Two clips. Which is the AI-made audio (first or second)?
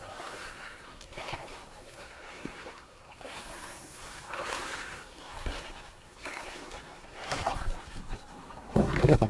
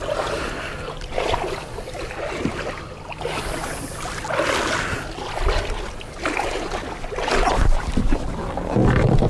first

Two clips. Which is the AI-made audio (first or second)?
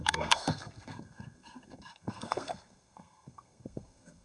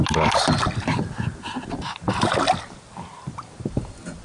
first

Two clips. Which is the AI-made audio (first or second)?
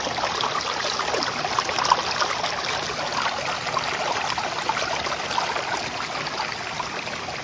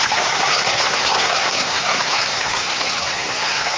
second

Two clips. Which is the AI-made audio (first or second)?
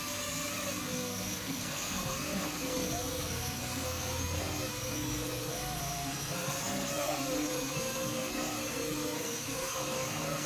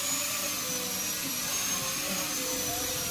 first